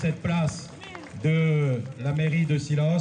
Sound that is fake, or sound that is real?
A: real